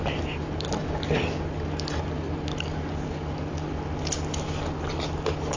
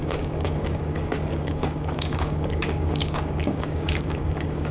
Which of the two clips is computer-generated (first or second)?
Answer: second